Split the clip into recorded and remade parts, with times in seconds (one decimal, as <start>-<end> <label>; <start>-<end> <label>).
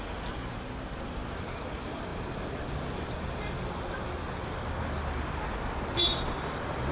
0.0-6.9 recorded